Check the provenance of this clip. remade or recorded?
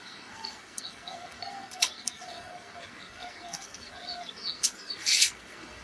remade